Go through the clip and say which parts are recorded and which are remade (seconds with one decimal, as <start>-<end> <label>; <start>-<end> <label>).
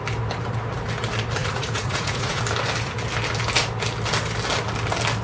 0.0-1.4 recorded; 1.4-2.4 remade; 2.4-5.2 recorded